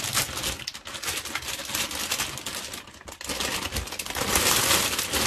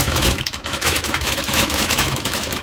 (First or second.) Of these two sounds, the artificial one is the second